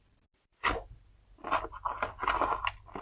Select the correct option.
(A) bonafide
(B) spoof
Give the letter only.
A